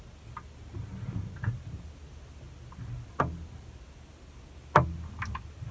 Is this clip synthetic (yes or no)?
no